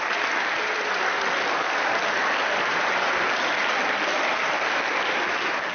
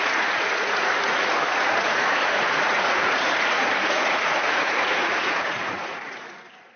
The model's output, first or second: second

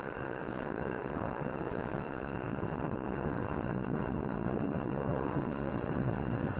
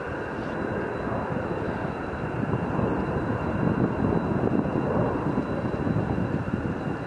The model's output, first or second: first